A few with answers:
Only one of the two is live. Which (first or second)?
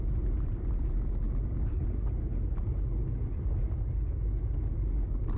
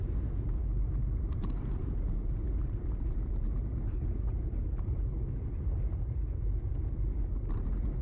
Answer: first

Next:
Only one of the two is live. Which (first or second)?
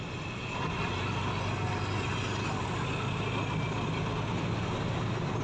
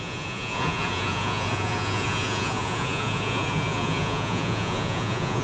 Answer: first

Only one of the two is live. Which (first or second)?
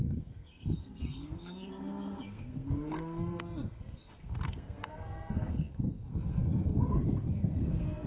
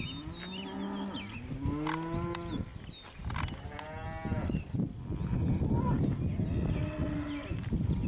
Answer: second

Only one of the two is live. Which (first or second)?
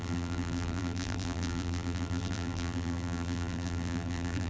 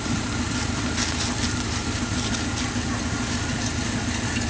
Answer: second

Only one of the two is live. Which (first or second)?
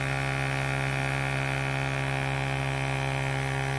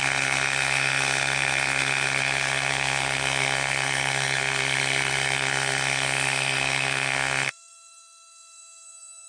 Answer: first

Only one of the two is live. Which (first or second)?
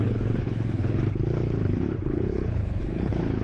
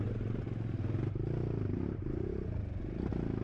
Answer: second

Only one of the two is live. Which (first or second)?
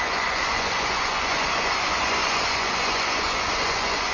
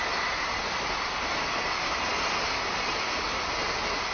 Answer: second